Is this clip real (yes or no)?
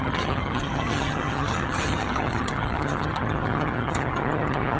no